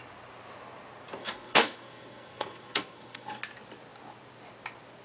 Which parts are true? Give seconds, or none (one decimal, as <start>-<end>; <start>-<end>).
0.0-1.2; 3.4-5.0